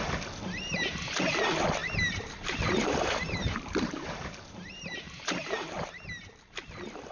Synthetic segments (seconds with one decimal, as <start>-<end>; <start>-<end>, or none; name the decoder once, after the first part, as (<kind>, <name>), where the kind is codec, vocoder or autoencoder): 1.8-6.1 (vocoder, BigVGAN v2)